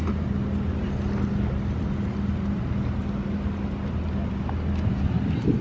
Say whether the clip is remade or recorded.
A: recorded